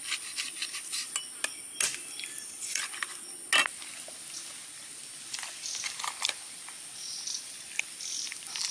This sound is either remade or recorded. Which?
recorded